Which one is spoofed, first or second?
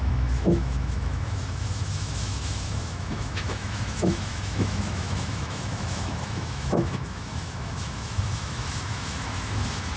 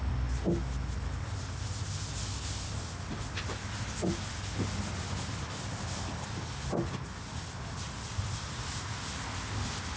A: first